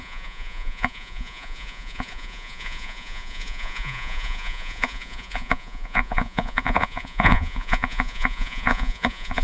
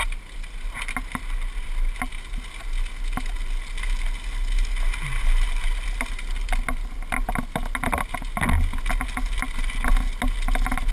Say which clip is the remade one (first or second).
first